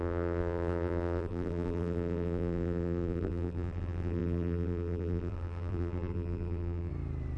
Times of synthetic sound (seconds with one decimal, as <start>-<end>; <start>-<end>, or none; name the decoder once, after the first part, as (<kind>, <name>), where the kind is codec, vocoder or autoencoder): 0.0-6.9 (vocoder, BigVGAN v2)